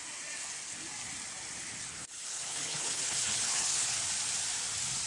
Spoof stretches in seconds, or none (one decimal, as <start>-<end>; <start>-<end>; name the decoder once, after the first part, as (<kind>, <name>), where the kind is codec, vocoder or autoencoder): 1.9-4.0 (codec, HILCodec)